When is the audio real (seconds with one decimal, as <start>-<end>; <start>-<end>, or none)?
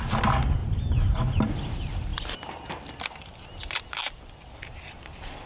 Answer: 0.0-5.5